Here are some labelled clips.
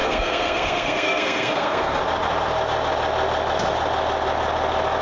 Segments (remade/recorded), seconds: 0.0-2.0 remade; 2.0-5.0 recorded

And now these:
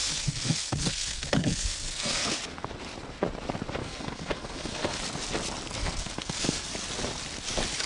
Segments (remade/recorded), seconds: 0.0-2.3 remade; 2.3-3.8 recorded; 3.8-5.0 remade; 5.0-5.8 recorded; 5.8-6.7 remade; 6.7-7.9 recorded

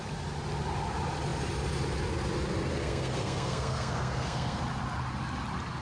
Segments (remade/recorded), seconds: 0.0-2.8 recorded; 2.8-4.6 remade; 4.6-5.8 recorded

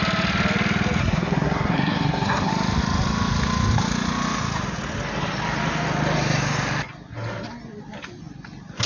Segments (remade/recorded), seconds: 0.0-1.0 recorded; 1.0-2.5 remade; 2.5-8.9 recorded